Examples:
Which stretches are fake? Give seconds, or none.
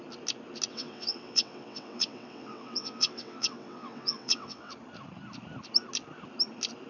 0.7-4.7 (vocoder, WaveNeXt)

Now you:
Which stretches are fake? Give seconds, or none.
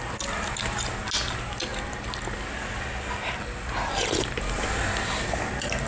none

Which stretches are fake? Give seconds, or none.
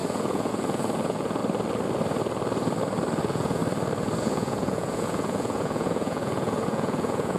0.0-1.4 (vocoder, Vocos); 3.2-3.6; 4.2-7.4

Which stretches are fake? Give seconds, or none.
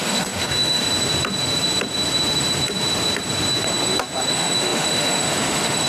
0.0-0.8 (autoencoder, DAC-VAE); 4.3-5.9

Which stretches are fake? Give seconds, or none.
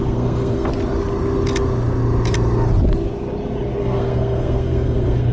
0.0-0.7 (codec, SNAC); 3.8-5.3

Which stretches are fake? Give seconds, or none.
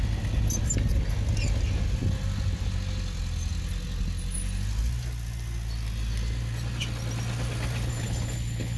7.9-8.8 (codec, HILCodec)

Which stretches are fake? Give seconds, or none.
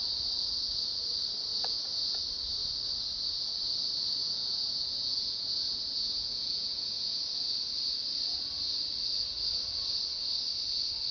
1.5-2.1 (vocoder, Vocos); 4.2-7.2